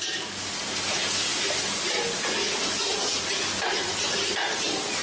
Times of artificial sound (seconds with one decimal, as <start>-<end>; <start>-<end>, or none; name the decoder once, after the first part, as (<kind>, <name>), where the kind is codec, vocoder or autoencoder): none